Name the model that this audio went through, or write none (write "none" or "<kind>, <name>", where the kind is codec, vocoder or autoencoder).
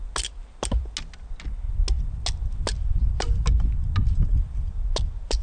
none